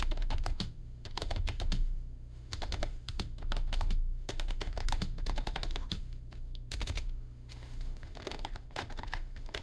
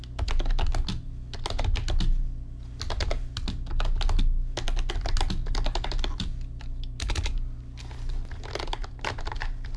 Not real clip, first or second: first